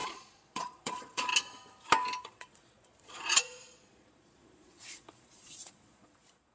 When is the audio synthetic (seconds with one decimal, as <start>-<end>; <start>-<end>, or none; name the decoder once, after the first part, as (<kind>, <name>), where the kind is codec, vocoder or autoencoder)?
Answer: 0.0-1.3 (vocoder, Vocos); 2.2-6.5